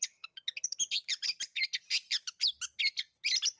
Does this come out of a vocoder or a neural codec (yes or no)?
no